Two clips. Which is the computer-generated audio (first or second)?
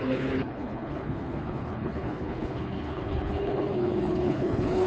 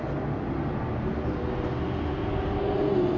first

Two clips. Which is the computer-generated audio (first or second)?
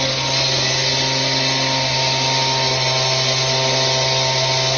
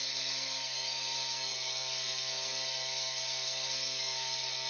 second